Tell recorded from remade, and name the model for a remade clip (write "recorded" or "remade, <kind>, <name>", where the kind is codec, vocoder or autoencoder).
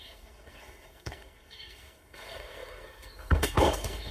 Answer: remade, codec, SNAC